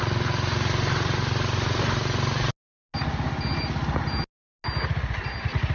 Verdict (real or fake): real